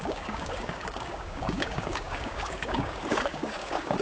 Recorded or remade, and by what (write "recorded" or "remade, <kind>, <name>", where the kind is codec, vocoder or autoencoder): remade, codec, DAC